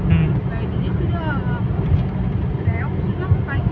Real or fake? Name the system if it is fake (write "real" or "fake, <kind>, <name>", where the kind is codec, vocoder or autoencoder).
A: real